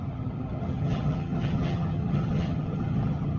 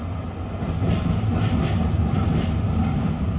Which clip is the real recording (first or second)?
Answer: second